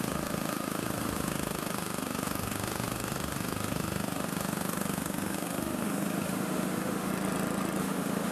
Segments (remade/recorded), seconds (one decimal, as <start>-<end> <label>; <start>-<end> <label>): 0.0-7.1 remade; 7.1-7.8 recorded; 7.8-8.3 remade